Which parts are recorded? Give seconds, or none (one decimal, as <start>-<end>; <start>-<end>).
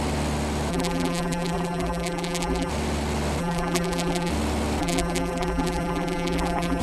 0.0-0.7; 2.7-3.4; 4.3-4.8